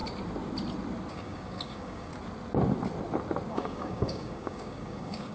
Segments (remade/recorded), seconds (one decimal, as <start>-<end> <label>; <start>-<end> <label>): 0.0-1.1 recorded; 1.1-2.1 remade; 2.1-3.5 recorded; 3.5-5.3 remade